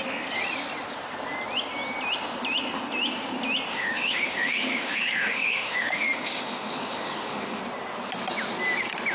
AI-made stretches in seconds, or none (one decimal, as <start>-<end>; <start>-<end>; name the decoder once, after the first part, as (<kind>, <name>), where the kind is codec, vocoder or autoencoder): 3.7-7.6 (autoencoder, DAC-VAE)